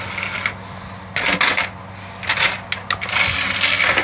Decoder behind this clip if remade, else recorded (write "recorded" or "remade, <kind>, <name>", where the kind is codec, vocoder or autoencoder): recorded